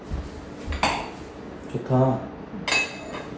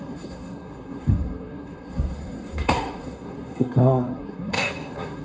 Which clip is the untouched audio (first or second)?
first